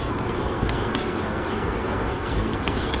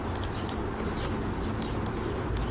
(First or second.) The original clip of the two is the second